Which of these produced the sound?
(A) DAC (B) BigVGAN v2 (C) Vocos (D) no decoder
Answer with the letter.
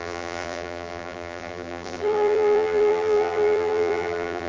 B